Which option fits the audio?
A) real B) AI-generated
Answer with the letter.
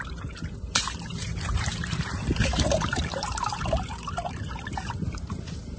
B